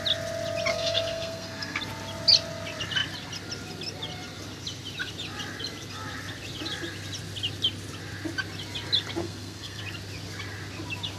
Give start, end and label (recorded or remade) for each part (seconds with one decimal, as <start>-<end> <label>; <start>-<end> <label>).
0.0-0.7 recorded; 0.7-1.8 remade; 1.8-9.2 recorded; 9.2-9.8 remade; 9.8-11.2 recorded